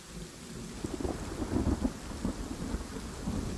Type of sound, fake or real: real